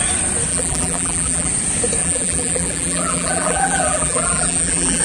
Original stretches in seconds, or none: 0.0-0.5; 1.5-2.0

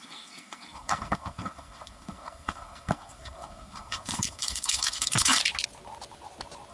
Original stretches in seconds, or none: 5.4-6.7

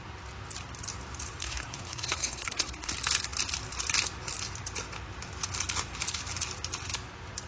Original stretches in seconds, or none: 0.0-1.4; 2.9-7.5

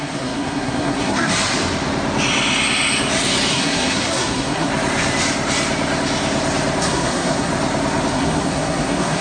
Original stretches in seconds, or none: 1.3-3.5; 4.7-6.8; 7.5-8.1

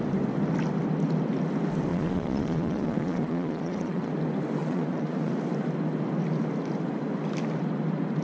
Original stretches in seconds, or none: 0.0-1.9; 4.1-4.6; 5.3-8.2

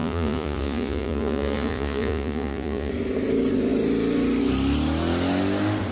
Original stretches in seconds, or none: 2.9-5.9

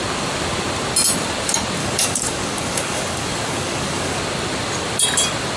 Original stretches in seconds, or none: 0.0-1.8; 4.2-5.6